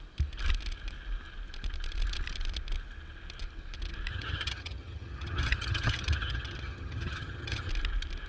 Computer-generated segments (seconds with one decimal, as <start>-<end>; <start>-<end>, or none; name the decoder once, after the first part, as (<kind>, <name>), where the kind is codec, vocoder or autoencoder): 4.1-7.7 (vocoder, HiFi-GAN)